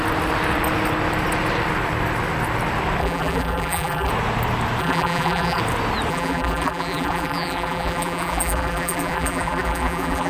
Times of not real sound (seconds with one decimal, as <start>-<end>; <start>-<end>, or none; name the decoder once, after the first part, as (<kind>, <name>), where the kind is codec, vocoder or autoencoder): 3.0-4.1 (vocoder, BigVGAN v2); 4.8-5.6; 6.1-10.3